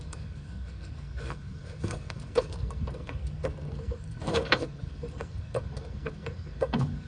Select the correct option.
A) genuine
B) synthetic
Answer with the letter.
B